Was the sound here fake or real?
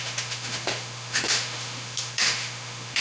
fake